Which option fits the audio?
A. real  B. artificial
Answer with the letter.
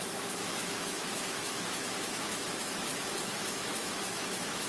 B